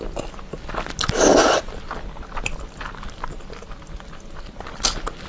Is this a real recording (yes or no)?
yes